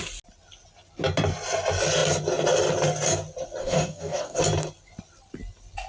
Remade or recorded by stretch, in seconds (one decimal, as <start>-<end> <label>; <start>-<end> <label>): 0.0-3.6 recorded; 3.6-4.4 remade; 4.4-5.9 recorded